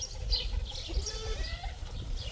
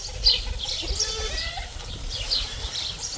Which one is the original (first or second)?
second